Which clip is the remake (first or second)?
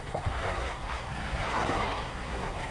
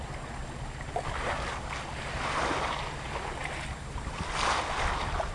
first